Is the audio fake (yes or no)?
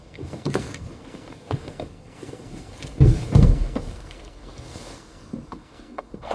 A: yes